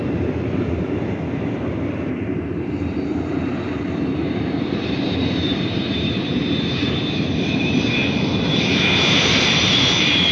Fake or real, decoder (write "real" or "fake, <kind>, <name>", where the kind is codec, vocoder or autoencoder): fake, vocoder, BigVGAN v2